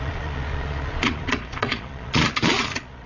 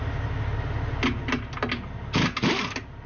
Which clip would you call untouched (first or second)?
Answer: second